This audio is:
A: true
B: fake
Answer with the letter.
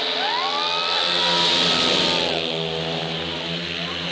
A